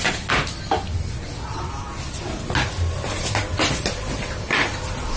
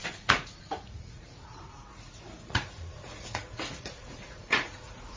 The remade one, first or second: second